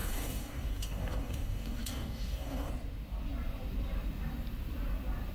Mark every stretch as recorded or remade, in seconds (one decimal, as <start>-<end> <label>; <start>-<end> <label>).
0.0-2.7 remade; 2.7-5.3 recorded